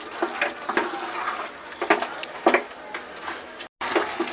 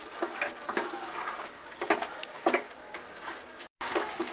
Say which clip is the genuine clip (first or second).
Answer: first